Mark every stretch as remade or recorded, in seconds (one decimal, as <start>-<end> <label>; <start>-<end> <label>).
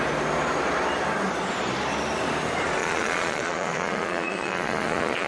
0.0-2.8 recorded; 2.8-5.3 remade